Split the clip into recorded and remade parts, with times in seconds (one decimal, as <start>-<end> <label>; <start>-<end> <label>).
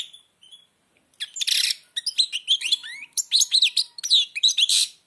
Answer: 0.0-2.8 recorded; 2.8-3.9 remade; 3.9-4.3 recorded; 4.3-5.1 remade